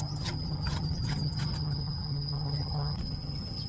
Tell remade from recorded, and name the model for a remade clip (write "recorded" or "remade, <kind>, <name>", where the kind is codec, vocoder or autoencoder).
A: remade, vocoder, HiFi-GAN